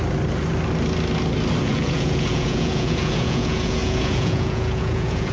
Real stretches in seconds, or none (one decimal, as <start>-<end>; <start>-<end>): 0.0-1.6